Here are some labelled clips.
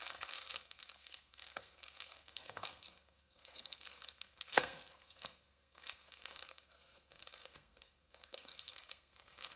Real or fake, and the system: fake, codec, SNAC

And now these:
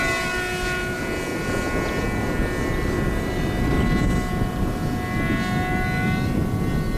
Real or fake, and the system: real